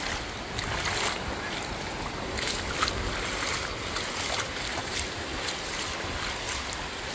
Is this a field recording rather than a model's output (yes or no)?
yes